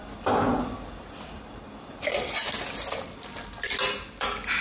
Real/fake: real